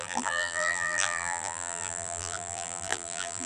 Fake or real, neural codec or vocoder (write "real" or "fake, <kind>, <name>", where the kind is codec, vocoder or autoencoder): fake, vocoder, BigVGAN v2